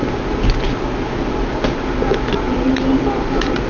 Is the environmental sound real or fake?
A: real